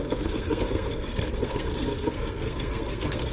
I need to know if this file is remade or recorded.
remade